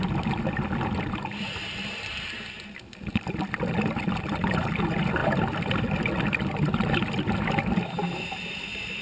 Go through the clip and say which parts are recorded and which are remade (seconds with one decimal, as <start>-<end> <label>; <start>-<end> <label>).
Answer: 0.0-9.0 recorded